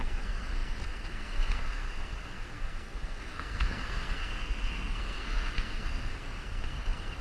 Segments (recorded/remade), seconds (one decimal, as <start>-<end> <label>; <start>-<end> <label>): 0.0-7.2 remade